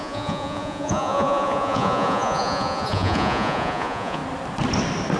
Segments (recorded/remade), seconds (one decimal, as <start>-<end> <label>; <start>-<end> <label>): 0.0-4.2 remade; 4.2-5.2 recorded